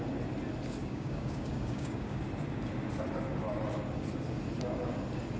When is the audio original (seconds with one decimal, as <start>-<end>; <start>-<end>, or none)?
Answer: 0.0-0.8; 2.2-5.4